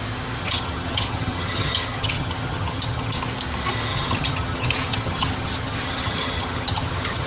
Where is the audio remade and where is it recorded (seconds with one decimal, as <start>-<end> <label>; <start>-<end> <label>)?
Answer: 0.0-0.4 recorded; 0.4-3.2 remade; 3.2-3.9 recorded; 3.9-7.3 remade